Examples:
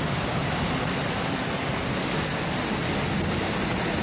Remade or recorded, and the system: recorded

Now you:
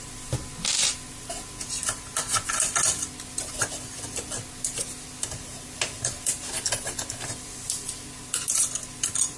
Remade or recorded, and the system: recorded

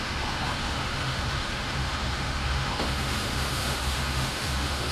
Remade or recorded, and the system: remade, autoencoder, DAC-VAE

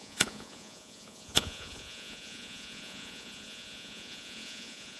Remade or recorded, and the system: remade, vocoder, Vocos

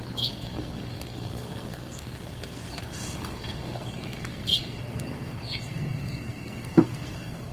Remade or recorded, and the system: remade, codec, SNAC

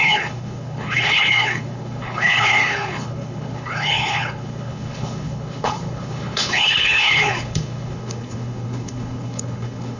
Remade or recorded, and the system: remade, codec, HILCodec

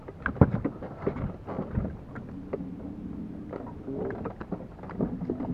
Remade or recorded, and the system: recorded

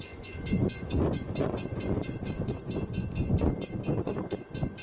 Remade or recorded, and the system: remade, vocoder, Vocos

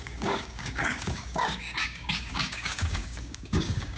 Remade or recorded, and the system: remade, codec, DAC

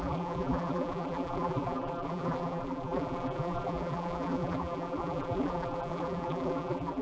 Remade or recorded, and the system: remade, vocoder, BigVGAN v2